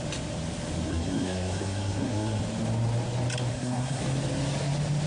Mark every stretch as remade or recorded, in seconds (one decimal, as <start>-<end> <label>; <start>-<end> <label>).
0.0-0.9 recorded; 0.9-2.4 remade; 2.4-3.5 recorded; 3.5-4.0 remade; 4.0-5.1 recorded